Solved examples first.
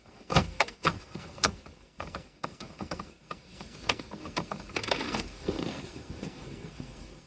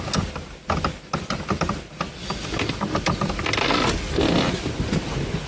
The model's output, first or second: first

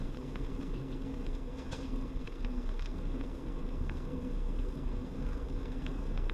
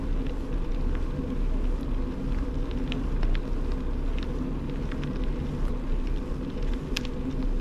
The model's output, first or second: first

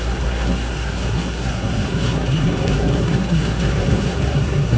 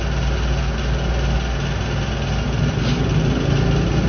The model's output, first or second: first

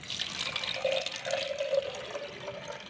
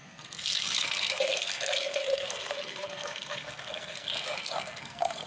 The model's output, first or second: second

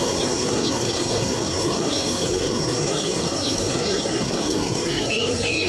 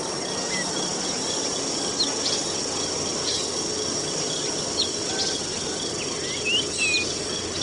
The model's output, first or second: first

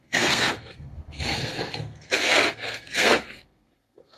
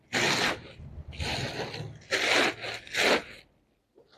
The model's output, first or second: first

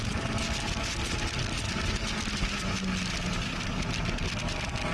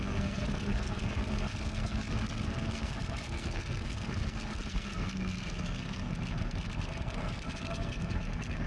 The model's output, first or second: second